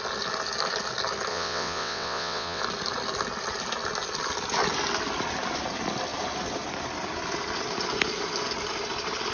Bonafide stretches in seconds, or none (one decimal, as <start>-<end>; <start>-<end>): 0.0-1.3; 2.6-9.3